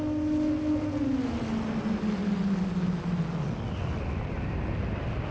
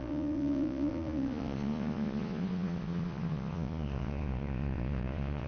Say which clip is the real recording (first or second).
first